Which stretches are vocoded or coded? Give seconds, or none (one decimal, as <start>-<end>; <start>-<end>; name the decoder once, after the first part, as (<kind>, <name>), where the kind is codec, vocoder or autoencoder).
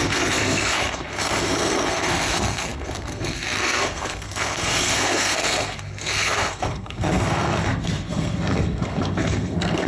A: 0.0-9.9 (codec, SNAC)